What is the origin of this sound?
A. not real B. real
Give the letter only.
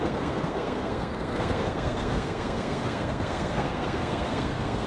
A